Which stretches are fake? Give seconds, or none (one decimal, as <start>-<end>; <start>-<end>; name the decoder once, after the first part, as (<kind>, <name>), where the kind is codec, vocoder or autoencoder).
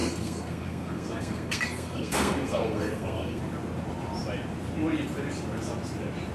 0.0-3.4 (codec, SNAC)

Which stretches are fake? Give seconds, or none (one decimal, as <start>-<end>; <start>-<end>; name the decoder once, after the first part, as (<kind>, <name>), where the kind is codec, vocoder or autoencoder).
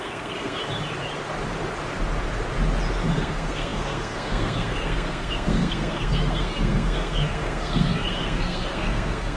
0.0-0.6 (codec, SNAC); 3.1-9.4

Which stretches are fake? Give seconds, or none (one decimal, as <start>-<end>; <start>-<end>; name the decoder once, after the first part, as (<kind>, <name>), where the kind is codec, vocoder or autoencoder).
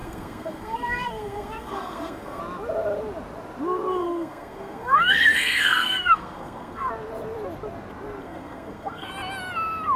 0.0-2.4 (codec, SNAC); 3.9-6.9; 8.2-9.1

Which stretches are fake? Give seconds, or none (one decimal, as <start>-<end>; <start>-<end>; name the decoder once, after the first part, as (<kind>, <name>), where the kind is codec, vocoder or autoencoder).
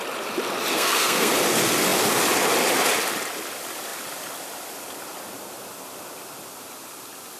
0.7-1.3 (codec, SNAC)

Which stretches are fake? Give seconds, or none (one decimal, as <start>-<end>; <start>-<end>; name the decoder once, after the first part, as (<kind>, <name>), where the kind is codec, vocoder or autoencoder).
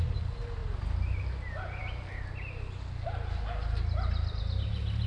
none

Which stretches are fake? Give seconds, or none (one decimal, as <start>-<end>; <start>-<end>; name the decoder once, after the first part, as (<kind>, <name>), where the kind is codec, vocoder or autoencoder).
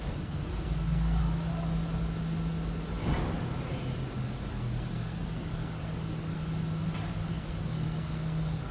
0.0-1.2 (codec, SNAC); 4.5-6.4; 7.1-8.7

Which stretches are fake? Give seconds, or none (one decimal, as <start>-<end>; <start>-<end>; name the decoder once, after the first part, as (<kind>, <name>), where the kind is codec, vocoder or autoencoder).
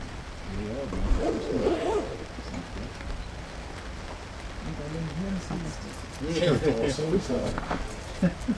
7.0-7.8 (codec, SNAC)